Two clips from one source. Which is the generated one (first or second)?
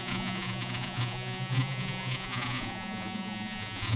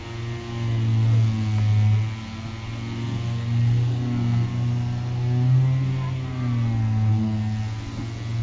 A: first